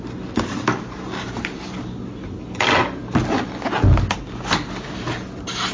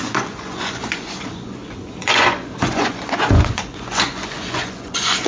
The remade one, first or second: second